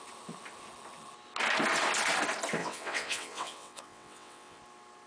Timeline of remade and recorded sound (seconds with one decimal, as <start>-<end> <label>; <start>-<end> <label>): 0.0-2.6 recorded; 2.6-4.6 remade; 4.6-5.1 recorded

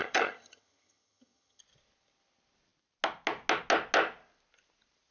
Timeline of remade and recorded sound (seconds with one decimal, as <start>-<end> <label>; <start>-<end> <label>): 0.0-1.6 remade; 1.6-5.1 recorded

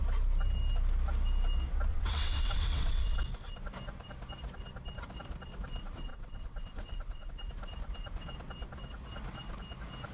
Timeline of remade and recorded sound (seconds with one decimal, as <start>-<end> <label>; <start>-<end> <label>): 0.0-1.9 recorded; 1.9-3.2 remade; 3.2-6.1 recorded; 6.1-7.3 remade; 7.3-10.1 recorded

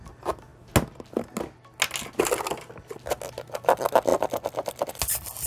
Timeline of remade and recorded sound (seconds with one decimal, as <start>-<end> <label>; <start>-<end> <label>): 0.0-5.5 recorded

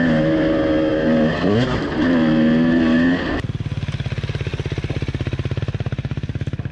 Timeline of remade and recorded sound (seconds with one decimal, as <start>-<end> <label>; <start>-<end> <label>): 0.0-6.7 recorded

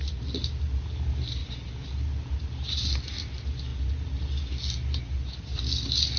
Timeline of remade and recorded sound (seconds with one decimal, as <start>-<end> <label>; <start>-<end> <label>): 0.0-3.7 remade; 3.7-5.0 recorded; 5.0-6.2 remade

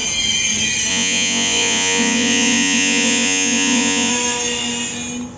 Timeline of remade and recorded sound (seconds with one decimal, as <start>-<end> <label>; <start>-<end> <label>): 0.0-0.9 recorded; 0.9-4.1 remade; 4.1-5.4 recorded